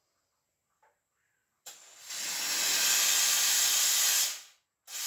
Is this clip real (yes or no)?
yes